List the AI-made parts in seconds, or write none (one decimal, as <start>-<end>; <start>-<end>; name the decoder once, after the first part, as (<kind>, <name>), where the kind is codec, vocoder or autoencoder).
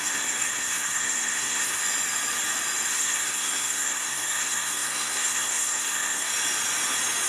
0.0-1.8 (codec, SNAC); 2.9-6.3